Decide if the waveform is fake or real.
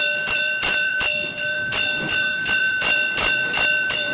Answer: fake